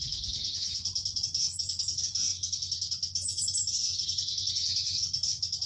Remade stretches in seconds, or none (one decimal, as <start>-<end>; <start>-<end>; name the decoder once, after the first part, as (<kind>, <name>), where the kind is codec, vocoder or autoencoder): 0.0-5.7 (autoencoder, DAC-VAE)